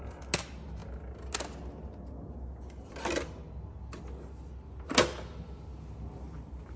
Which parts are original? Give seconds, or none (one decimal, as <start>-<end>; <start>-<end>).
0.0-6.8